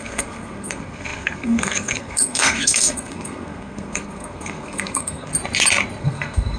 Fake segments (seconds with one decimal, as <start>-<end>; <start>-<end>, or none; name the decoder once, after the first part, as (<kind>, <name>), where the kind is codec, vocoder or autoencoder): 0.0-5.3 (codec, SNAC); 6.0-6.6